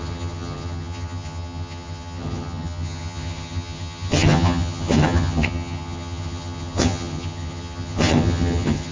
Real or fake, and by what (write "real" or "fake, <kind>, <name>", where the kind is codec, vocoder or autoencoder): fake, vocoder, HiFi-GAN